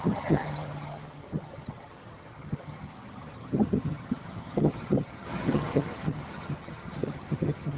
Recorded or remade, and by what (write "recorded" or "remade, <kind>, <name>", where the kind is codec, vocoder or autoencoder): remade, vocoder, HiFi-GAN